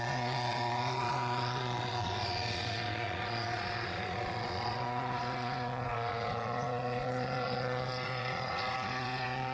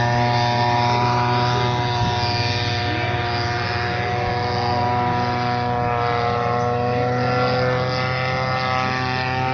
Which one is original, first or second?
second